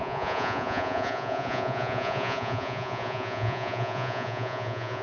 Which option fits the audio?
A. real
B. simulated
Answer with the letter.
B